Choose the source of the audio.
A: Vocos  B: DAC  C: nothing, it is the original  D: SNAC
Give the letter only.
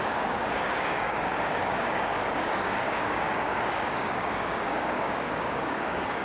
B